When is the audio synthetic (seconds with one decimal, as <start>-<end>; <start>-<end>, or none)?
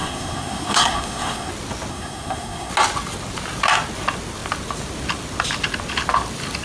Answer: 0.0-1.5; 1.9-2.7